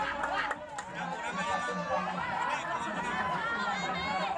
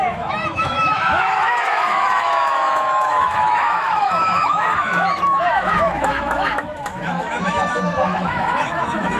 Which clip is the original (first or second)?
first